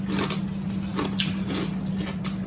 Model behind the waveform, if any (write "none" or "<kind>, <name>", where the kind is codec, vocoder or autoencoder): none